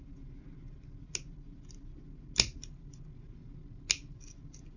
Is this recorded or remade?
recorded